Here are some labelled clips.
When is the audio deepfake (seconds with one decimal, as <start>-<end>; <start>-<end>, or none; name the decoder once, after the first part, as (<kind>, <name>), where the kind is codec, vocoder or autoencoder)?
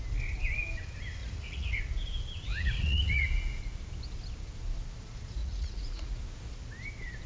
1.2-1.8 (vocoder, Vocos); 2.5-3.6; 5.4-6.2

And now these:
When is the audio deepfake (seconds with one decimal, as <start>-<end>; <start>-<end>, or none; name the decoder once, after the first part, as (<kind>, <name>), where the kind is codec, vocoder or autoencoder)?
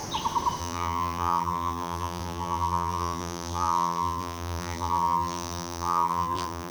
0.6-6.7 (vocoder, BigVGAN v2)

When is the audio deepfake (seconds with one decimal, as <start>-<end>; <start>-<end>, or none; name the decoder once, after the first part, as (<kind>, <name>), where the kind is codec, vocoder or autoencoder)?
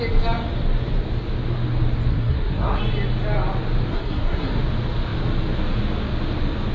2.1-2.8 (codec, SNAC); 3.9-4.6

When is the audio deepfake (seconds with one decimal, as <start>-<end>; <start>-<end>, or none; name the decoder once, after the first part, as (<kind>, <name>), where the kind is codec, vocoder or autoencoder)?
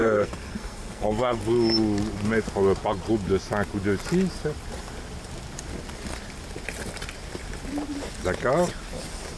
0.0-1.4 (codec, SNAC)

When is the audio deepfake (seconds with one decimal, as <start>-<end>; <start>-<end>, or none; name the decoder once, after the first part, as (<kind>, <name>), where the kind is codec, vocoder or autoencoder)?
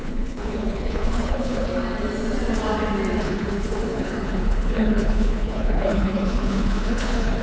0.0-1.7 (codec, HILCodec); 3.2-7.4